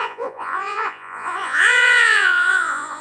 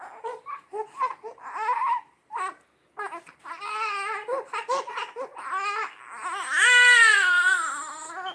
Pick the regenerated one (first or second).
first